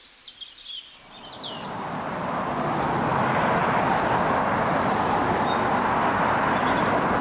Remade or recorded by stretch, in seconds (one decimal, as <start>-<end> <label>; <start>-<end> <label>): 0.0-7.2 recorded